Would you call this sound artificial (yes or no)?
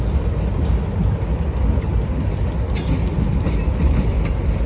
no